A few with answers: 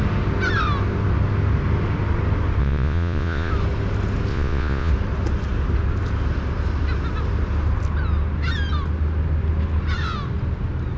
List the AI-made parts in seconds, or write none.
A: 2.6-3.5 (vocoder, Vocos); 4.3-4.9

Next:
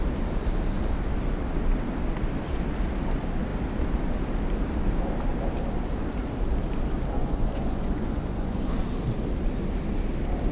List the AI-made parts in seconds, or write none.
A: 7.2-8.7 (vocoder, Vocos)

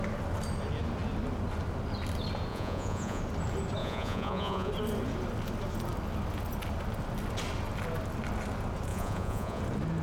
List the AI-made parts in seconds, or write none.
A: 2.5-3.2 (vocoder, Vocos); 3.8-4.7; 8.9-9.6

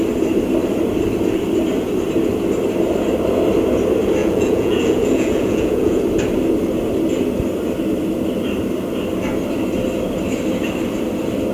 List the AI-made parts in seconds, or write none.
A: 4.2-6.0 (vocoder, Vocos)